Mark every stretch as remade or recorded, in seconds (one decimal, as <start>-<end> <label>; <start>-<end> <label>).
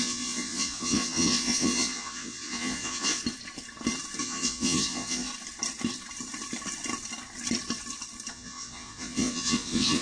0.0-3.2 remade; 3.2-4.2 recorded; 4.2-5.3 remade; 5.3-8.3 recorded; 8.3-10.0 remade